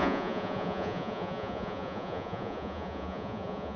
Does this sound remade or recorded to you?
remade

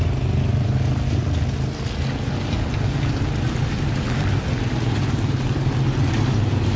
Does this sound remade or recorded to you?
recorded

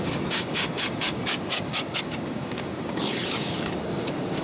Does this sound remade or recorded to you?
remade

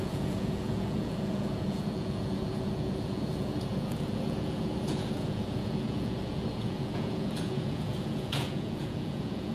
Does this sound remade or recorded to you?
remade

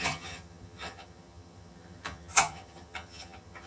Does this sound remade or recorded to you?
remade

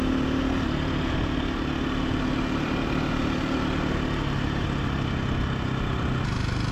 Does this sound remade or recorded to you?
recorded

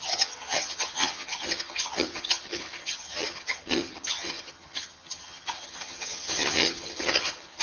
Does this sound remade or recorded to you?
remade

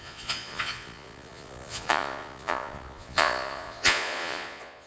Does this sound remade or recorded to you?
remade